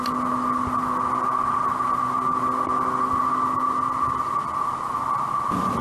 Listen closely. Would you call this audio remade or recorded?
recorded